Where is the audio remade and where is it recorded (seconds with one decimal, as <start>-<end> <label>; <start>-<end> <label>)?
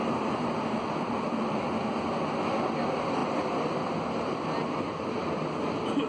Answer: 0.0-6.1 recorded